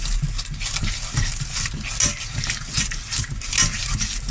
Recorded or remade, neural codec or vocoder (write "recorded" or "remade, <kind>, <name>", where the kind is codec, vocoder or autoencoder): recorded